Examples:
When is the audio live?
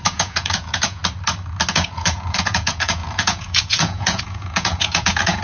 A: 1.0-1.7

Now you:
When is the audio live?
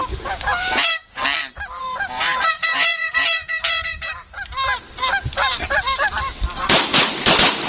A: 1.2-1.8; 4.1-7.7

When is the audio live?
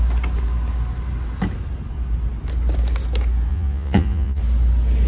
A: 0.0-3.5; 4.4-5.1